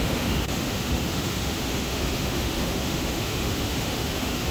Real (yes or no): no